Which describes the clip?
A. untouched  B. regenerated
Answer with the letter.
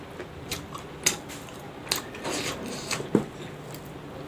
A